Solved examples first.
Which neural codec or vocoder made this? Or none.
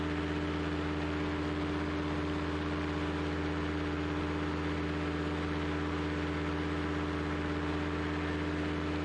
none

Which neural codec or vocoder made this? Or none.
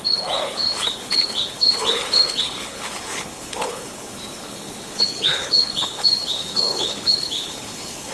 codec, HILCodec